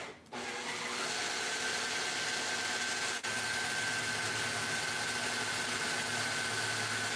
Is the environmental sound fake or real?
real